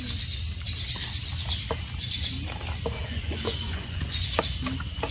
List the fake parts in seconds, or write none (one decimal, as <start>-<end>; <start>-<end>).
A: 3.0-4.4